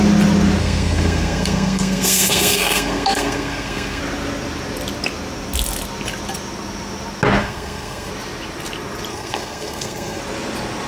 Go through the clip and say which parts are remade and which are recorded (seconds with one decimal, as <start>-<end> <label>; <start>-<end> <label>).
0.0-0.6 recorded; 0.6-4.0 remade; 4.0-7.4 recorded; 7.4-8.1 remade; 8.1-9.1 recorded; 9.1-10.2 remade; 10.2-10.9 recorded